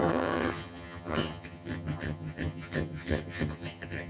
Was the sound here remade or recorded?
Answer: remade